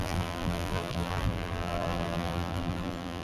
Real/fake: fake